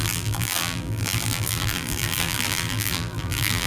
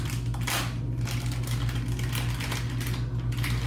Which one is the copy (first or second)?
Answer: first